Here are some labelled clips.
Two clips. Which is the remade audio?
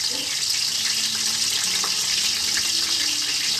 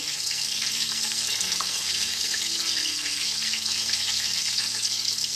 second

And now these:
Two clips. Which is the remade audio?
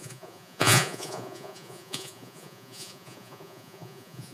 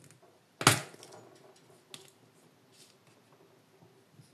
first